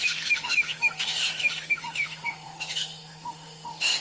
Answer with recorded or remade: remade